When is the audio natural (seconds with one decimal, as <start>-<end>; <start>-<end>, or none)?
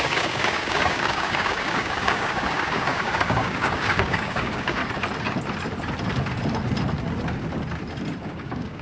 4.8-8.2